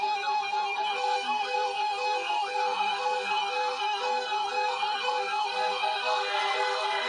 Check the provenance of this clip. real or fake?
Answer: fake